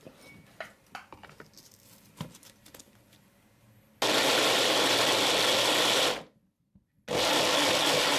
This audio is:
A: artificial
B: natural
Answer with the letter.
B